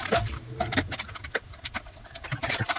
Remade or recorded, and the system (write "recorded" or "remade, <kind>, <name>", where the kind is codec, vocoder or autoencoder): recorded